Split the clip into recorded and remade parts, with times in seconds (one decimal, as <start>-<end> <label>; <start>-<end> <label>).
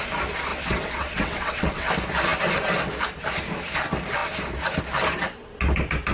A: 0.0-0.5 recorded; 0.5-1.9 remade; 1.9-6.1 recorded